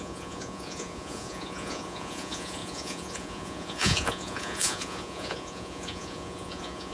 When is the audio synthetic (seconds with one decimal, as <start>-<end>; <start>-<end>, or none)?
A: 0.0-6.9